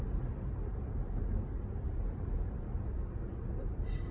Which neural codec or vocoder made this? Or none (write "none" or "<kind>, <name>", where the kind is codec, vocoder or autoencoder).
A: none